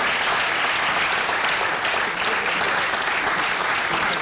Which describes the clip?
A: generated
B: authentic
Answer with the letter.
B